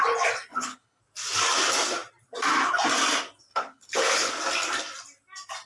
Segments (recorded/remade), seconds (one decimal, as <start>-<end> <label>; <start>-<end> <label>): 0.0-0.5 recorded; 0.5-1.0 remade; 1.0-3.5 recorded; 3.5-4.3 remade; 4.3-5.7 recorded